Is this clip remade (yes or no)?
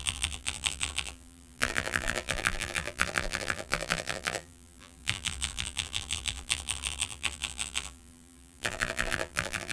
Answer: yes